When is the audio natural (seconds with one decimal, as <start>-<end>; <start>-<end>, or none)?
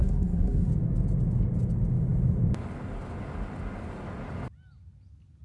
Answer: 0.7-5.4